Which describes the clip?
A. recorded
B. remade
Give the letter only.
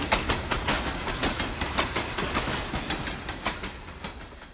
A